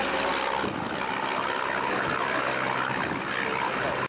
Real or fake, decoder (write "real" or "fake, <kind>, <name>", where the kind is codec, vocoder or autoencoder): real